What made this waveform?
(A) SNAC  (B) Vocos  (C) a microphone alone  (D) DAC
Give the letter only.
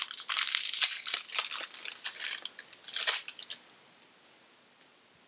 C